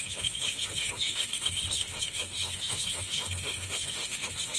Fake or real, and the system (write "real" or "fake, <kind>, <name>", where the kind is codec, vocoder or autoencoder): fake, autoencoder, DAC-VAE